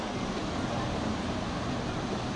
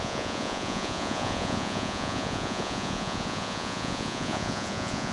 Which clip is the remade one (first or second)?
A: second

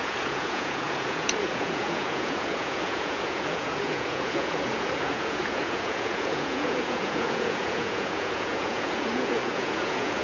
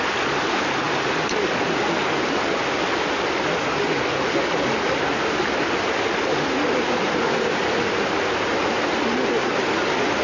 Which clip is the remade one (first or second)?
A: first